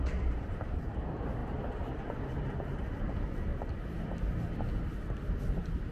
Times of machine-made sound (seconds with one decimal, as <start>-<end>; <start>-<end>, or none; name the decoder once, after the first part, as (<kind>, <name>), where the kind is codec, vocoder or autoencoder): 0.0-3.5 (vocoder, BigVGAN v2); 5.4-5.9